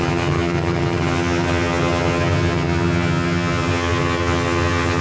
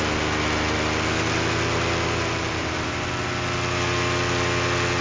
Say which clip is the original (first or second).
second